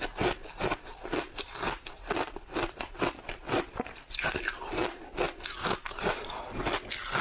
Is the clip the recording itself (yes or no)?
yes